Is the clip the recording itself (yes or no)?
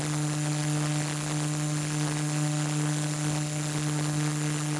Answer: yes